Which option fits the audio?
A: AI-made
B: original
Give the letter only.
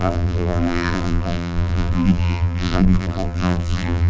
A